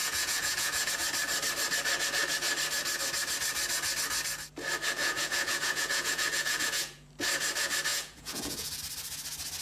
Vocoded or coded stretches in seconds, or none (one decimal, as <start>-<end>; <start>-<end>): 0.0-0.9; 5.0-7.1; 7.9-8.8